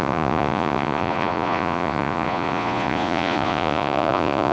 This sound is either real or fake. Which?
fake